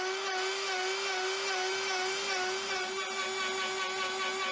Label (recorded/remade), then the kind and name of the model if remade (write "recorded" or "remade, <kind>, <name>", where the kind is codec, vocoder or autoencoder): recorded